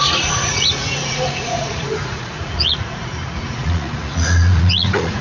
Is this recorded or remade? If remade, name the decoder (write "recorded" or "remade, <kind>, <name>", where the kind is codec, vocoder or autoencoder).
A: remade, vocoder, Vocos